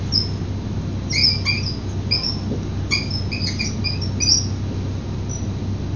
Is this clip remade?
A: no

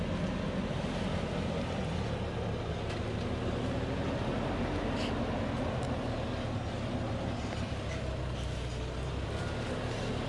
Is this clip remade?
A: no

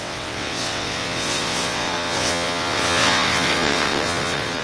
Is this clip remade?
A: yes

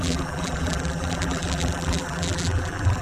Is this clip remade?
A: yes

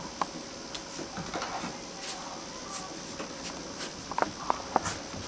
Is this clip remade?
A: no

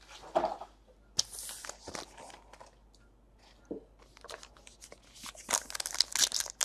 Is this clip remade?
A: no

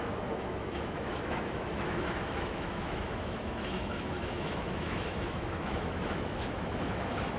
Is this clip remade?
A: yes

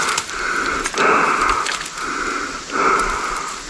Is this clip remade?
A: no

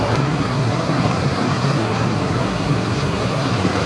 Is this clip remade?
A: yes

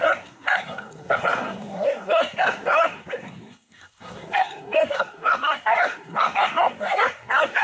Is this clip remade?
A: yes